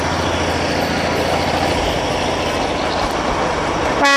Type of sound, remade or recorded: recorded